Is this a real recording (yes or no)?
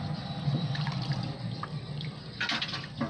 no